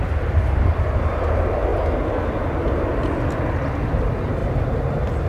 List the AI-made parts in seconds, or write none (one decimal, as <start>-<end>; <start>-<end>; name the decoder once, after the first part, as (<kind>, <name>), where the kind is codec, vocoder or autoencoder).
none